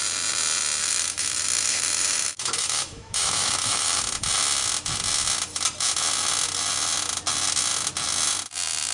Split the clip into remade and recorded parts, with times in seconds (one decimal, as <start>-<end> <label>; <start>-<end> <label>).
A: 0.0-0.8 recorded; 0.8-4.0 remade; 4.0-8.9 recorded